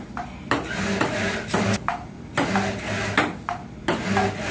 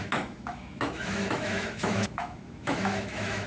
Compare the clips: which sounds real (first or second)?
first